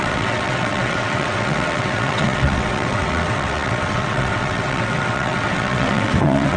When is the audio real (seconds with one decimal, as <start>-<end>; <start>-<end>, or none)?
none